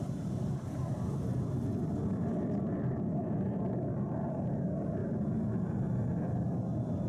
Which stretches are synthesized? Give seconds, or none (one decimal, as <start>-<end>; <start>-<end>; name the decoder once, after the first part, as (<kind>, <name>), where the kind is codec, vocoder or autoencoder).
0.0-5.0 (vocoder, BigVGAN v2); 6.2-7.1